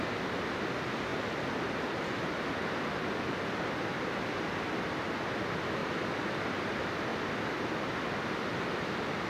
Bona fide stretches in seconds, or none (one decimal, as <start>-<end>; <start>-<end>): 0.0-9.3

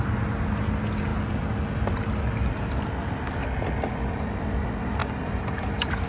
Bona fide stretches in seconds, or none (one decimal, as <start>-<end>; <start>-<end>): 0.0-5.0

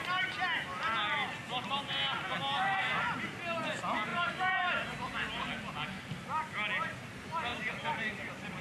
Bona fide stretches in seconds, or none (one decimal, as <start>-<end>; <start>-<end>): 0.0-4.1; 5.4-7.5

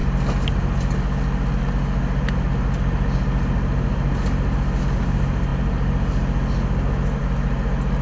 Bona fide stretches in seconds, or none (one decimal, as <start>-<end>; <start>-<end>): 0.0-8.0